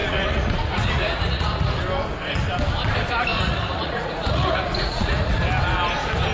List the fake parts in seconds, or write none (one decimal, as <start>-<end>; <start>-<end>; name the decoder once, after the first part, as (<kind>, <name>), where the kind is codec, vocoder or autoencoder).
0.0-1.8 (vocoder, Vocos); 3.3-5.3